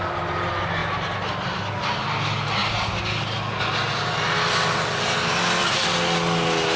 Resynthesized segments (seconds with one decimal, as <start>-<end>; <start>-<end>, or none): none